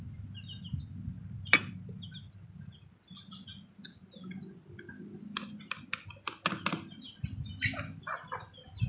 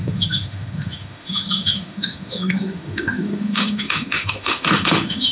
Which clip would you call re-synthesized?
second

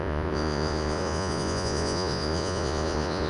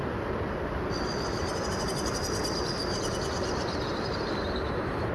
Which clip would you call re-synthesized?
first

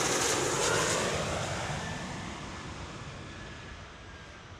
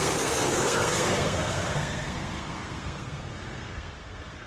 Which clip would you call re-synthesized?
second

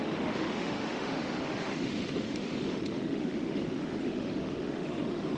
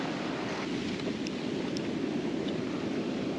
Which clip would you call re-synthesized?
first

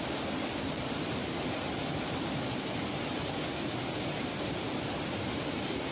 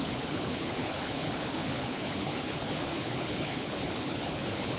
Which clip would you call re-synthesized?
second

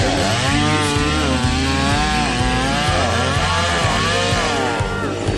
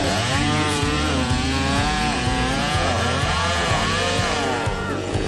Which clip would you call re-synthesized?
second